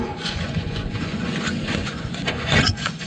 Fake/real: fake